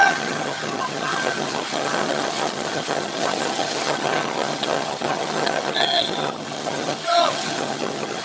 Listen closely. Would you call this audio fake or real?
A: fake